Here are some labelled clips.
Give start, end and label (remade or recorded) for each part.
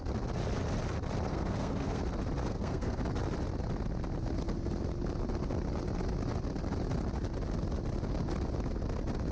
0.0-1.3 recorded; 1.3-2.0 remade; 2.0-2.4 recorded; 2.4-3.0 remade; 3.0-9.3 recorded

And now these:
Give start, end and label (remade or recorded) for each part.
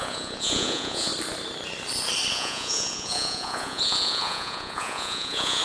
0.0-1.1 remade; 1.1-2.3 recorded; 2.3-5.6 remade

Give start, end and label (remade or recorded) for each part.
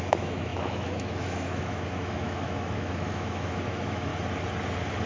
0.0-4.1 remade; 4.1-5.1 recorded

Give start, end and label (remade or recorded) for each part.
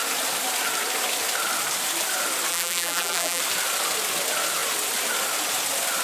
0.0-2.5 recorded; 2.5-3.4 remade; 3.4-6.0 recorded